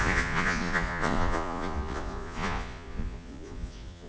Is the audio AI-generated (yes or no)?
yes